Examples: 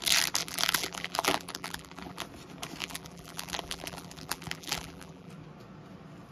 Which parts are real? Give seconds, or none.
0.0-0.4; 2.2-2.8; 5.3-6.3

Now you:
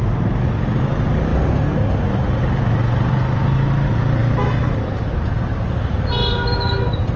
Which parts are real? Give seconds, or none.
0.0-7.2

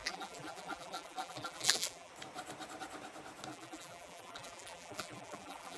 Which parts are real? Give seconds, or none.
2.1-3.5

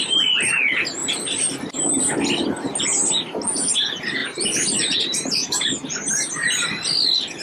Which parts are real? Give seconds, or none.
0.0-1.0; 1.6-4.2; 6.1-7.4

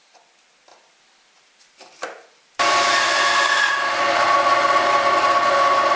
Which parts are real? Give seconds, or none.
0.0-0.7; 2.7-6.0